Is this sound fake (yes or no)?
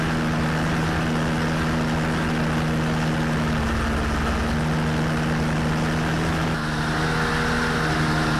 no